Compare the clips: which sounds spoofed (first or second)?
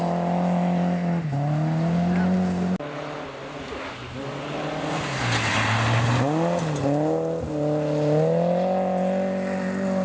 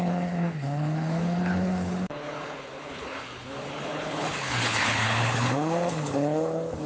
second